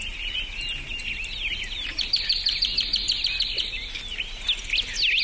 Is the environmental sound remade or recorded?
recorded